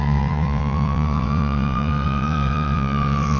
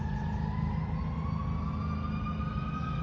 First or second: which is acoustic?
second